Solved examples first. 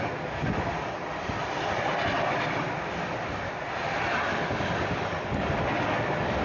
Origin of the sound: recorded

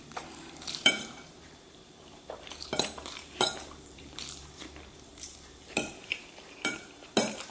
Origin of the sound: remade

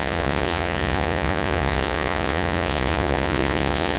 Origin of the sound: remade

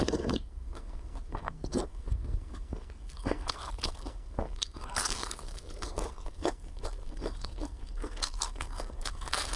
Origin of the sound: remade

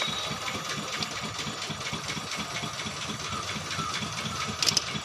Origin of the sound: recorded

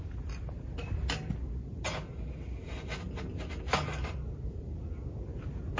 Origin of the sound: recorded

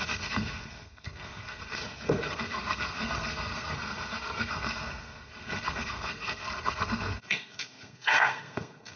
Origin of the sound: remade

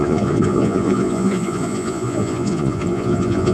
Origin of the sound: remade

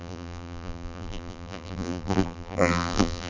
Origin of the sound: remade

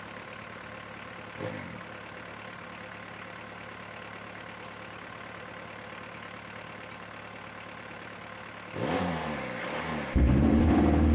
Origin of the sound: remade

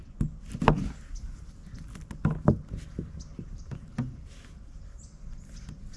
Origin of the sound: recorded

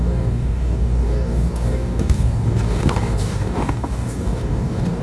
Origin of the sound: remade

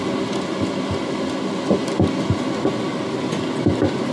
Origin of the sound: recorded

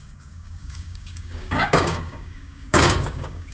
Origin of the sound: remade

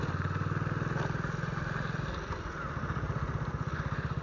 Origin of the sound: recorded